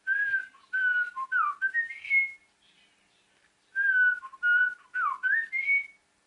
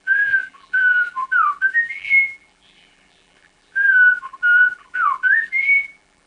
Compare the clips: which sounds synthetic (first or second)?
second